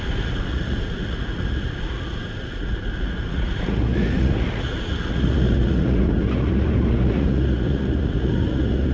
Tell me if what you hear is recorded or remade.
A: remade